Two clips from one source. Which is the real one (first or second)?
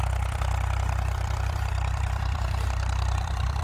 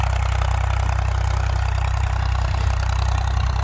second